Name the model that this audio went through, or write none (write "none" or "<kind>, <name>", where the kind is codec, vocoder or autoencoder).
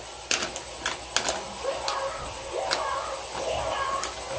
none